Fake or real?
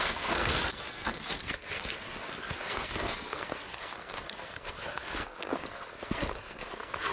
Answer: fake